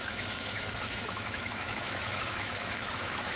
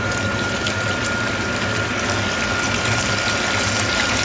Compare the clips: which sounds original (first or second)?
second